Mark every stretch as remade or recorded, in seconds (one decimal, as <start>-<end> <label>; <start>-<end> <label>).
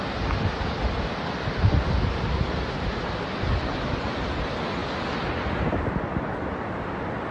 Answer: 0.0-7.3 recorded